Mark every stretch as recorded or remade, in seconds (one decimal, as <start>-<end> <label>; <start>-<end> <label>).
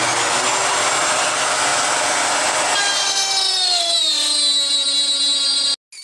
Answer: 0.0-6.0 recorded